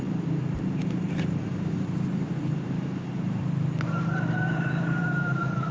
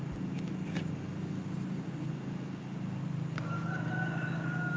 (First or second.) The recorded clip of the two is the second